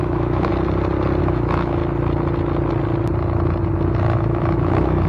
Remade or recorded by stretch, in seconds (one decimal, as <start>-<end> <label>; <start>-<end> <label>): 0.0-0.5 remade; 0.5-1.2 recorded; 1.2-1.8 remade; 1.8-4.0 recorded; 4.0-5.1 remade